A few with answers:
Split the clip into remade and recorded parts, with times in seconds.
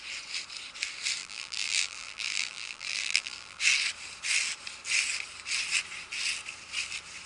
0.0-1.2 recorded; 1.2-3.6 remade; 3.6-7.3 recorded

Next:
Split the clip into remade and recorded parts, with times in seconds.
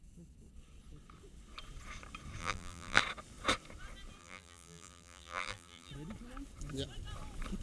0.0-2.4 recorded; 2.4-3.0 remade; 3.0-4.2 recorded; 4.2-5.9 remade; 5.9-7.6 recorded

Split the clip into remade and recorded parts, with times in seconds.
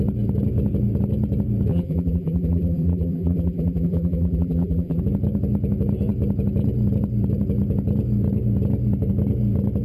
0.0-1.7 recorded; 1.7-5.0 remade; 5.0-9.8 recorded